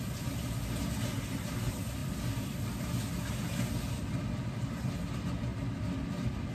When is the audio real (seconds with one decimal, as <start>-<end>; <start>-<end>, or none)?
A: 0.0-2.0; 2.8-5.5